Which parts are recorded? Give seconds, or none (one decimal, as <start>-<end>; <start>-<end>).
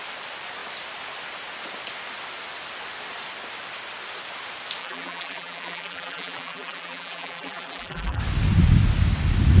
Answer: 0.0-4.8; 8.2-9.6